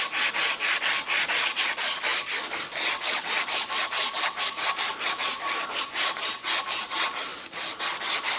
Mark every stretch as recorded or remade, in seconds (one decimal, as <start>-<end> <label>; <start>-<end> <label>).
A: 0.0-8.4 recorded